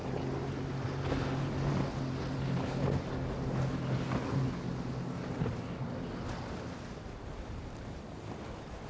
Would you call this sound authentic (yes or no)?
yes